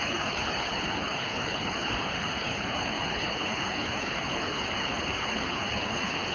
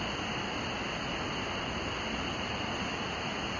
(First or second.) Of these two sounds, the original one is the second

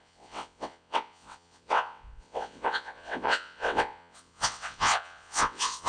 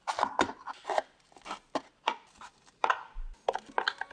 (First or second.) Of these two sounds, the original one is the second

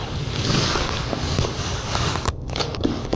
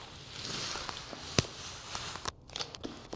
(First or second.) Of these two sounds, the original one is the second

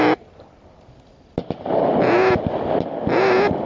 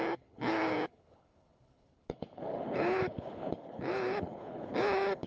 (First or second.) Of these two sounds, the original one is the first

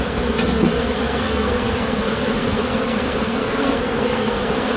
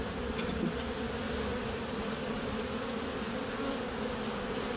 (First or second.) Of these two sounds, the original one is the second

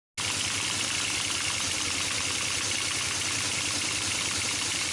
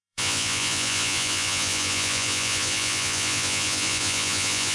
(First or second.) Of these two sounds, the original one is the first